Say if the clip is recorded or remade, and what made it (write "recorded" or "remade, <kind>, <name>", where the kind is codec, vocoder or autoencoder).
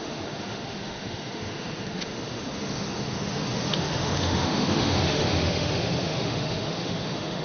remade, autoencoder, DAC-VAE